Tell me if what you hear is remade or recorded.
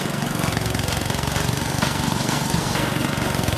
remade